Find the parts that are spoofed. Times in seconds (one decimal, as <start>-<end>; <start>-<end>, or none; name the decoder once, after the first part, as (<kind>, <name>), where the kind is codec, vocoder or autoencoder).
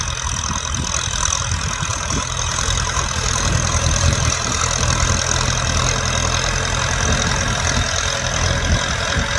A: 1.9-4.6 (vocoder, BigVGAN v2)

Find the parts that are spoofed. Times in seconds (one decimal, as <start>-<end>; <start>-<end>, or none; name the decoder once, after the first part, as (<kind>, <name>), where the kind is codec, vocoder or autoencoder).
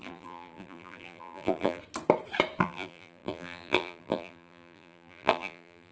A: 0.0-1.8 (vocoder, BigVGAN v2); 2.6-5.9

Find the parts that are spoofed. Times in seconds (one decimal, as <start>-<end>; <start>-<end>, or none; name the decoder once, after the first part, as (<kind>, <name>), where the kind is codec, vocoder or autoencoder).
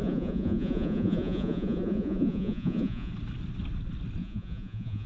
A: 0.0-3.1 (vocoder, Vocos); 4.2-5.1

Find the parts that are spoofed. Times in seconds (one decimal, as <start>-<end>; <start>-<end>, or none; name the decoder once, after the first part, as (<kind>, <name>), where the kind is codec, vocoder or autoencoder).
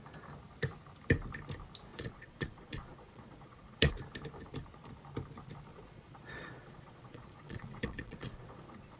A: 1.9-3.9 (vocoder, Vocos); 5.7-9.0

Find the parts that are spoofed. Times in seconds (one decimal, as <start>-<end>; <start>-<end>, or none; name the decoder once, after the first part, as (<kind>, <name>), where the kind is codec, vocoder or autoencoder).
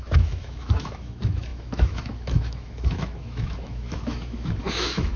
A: 0.0-5.2 (autoencoder, DAC-VAE)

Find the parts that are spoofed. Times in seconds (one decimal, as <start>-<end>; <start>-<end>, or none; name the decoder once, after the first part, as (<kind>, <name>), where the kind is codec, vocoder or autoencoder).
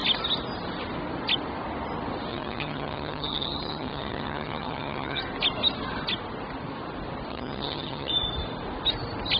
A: 2.3-5.2 (vocoder, HiFi-GAN); 7.3-8.1